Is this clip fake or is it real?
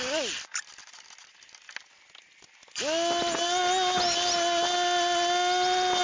real